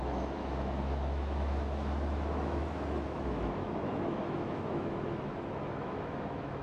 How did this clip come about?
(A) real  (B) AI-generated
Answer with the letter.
B